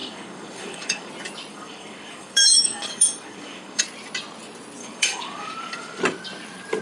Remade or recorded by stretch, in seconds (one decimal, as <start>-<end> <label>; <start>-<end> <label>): 0.0-1.1 remade; 1.1-1.5 recorded; 1.5-3.8 remade; 3.8-4.8 recorded; 4.8-6.0 remade; 6.0-6.8 recorded